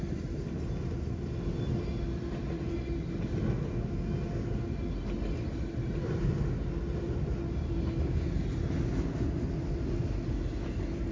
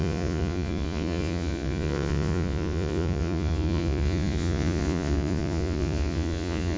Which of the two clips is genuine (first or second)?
first